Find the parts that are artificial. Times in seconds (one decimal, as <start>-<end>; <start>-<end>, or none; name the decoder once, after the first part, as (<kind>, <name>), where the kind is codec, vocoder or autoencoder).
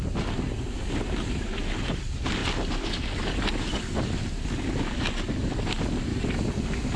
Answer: none